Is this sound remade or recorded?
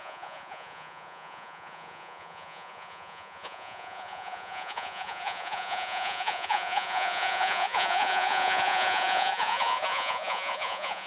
remade